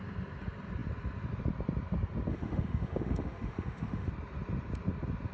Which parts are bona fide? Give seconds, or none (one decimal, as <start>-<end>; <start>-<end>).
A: 0.0-2.3; 4.1-5.3